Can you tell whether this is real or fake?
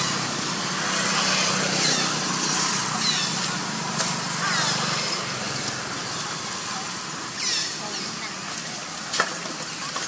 real